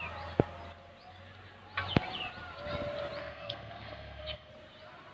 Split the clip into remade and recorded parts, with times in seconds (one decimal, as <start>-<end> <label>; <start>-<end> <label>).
0.0-3.2 recorded; 3.2-4.5 remade; 4.5-5.1 recorded

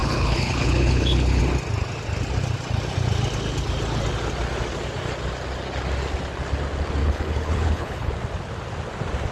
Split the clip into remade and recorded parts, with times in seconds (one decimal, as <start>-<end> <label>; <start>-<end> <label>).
0.0-1.4 remade; 1.4-7.0 recorded; 7.0-8.1 remade; 8.1-9.3 recorded

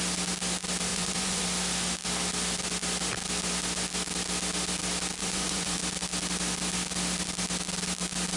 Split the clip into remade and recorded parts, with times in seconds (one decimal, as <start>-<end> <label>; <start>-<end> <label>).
0.0-0.9 recorded; 0.9-1.4 remade; 1.4-5.2 recorded; 5.2-5.8 remade; 5.8-8.4 recorded

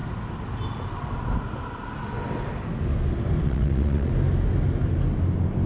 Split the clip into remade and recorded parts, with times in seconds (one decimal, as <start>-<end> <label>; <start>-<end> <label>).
0.0-3.4 recorded; 3.4-4.1 remade; 4.1-5.7 recorded

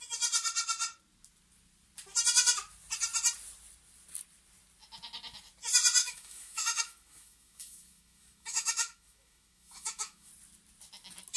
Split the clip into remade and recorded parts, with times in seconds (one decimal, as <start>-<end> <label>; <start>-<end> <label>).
0.0-6.0 recorded; 6.0-10.3 remade; 10.3-11.4 recorded

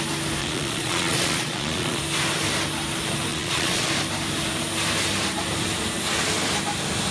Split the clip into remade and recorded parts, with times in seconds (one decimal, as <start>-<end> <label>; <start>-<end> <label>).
0.0-0.4 recorded; 0.4-2.0 remade; 2.0-3.3 recorded; 3.3-3.9 remade; 3.9-7.1 recorded